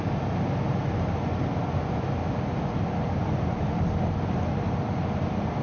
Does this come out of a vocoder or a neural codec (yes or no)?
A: no